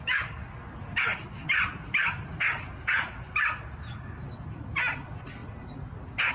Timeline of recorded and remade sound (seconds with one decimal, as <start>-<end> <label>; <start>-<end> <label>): 0.0-1.1 recorded; 1.1-3.5 remade; 3.5-6.3 recorded